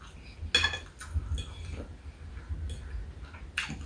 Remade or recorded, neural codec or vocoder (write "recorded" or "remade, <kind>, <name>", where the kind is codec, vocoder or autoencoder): recorded